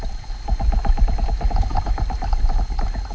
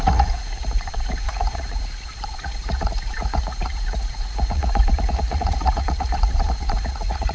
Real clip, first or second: first